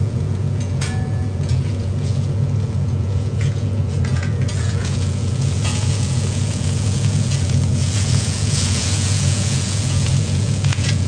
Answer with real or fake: fake